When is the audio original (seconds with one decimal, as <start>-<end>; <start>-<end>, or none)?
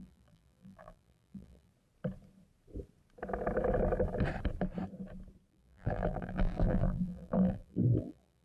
1.7-5.5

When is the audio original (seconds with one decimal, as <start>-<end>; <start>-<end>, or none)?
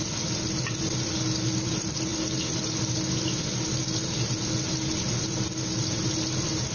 0.0-6.7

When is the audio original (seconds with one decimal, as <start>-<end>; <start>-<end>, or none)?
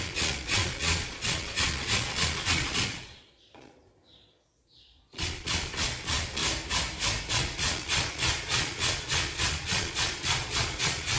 6.4-7.3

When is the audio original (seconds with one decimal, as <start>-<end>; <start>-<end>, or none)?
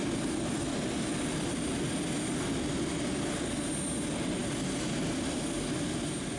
0.0-6.4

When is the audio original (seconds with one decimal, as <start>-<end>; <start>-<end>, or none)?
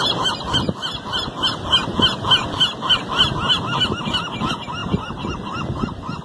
0.0-4.8; 5.3-6.2